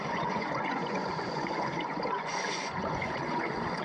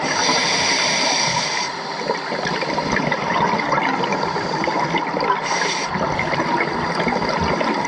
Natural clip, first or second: second